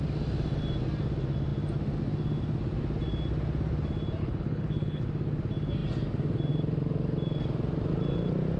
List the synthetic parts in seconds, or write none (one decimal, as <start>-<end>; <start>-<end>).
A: 4.2-5.0